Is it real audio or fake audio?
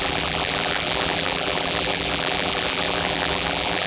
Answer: fake